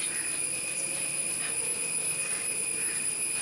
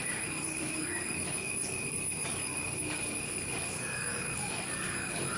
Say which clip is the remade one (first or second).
second